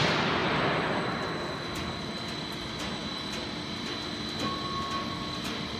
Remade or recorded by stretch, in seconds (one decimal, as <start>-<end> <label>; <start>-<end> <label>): 0.0-5.8 recorded